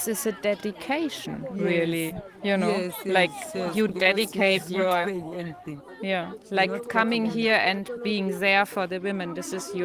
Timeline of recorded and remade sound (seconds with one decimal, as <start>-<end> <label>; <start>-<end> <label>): 0.0-3.9 recorded; 3.9-5.8 remade; 5.8-9.8 recorded